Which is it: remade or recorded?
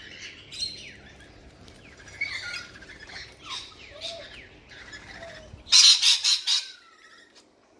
recorded